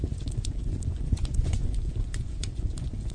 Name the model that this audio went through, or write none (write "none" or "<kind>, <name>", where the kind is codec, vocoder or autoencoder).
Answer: vocoder, Vocos